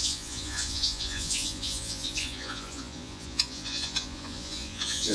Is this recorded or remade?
remade